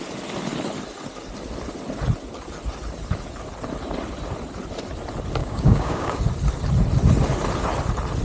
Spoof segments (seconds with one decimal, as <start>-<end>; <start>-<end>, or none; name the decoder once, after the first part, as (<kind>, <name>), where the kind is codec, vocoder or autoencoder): 5.4-6.2 (codec, DAC)